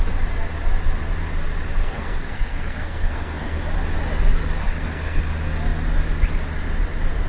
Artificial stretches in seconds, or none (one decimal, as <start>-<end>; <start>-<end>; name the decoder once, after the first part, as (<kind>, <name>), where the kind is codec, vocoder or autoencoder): 1.8-3.6 (codec, SNAC); 4.6-5.2